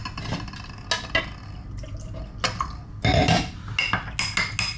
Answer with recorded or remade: recorded